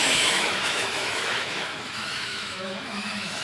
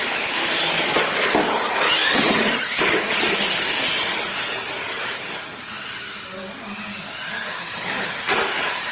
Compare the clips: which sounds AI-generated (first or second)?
first